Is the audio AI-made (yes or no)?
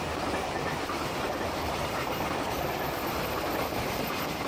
yes